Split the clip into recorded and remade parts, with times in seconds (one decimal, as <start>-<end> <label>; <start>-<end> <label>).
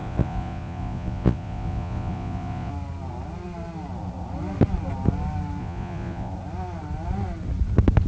0.0-2.7 remade; 2.7-5.6 recorded; 5.6-6.3 remade; 6.3-8.1 recorded